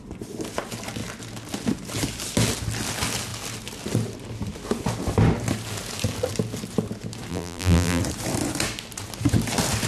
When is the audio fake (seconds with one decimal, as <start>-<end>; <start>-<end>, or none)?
7.3-8.0